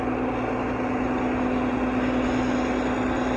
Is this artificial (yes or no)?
no